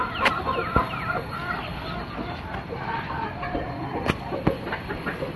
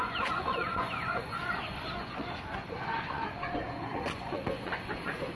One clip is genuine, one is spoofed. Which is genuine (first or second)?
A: first